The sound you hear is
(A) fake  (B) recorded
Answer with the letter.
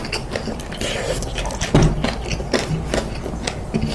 B